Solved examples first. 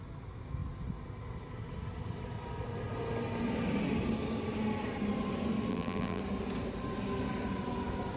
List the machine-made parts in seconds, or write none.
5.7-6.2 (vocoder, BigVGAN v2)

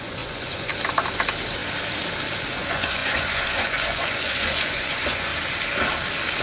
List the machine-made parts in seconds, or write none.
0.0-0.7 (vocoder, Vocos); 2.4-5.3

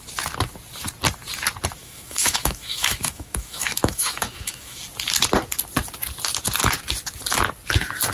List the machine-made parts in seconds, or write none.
1.8-4.8 (autoencoder, DAC-VAE)

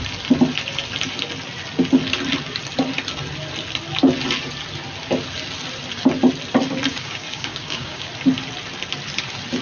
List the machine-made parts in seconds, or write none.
6.9-8.1 (codec, DAC)

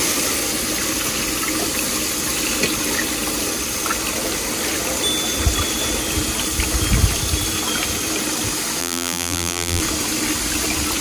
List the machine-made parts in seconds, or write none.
8.8-9.8 (vocoder, BigVGAN v2)

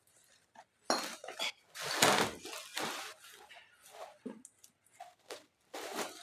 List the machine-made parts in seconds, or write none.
none